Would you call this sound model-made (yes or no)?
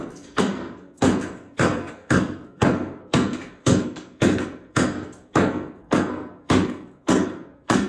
yes